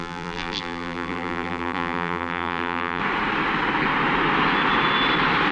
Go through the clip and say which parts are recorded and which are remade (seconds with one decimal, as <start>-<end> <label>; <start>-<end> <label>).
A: 0.0-3.0 remade; 3.0-5.5 recorded